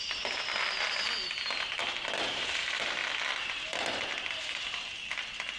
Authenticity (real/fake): real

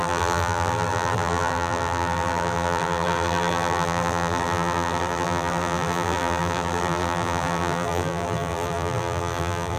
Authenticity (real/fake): fake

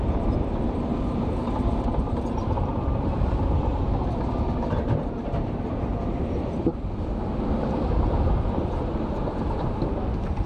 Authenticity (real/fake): fake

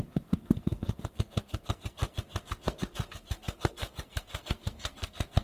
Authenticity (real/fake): fake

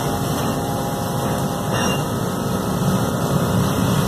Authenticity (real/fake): fake